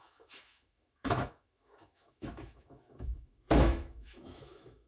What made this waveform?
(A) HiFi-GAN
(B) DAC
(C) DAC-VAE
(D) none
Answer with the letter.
C